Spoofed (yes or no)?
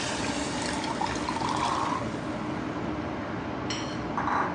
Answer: no